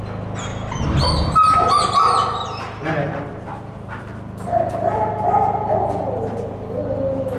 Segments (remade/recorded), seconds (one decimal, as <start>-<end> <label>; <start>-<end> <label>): 0.0-0.5 recorded; 0.5-1.9 remade; 1.9-3.3 recorded; 3.3-4.0 remade; 4.0-7.4 recorded